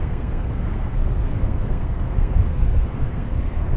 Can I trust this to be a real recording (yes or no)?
no